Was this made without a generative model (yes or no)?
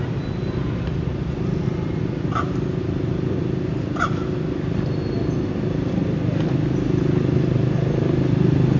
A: yes